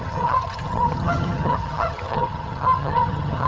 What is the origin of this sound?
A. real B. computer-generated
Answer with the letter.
B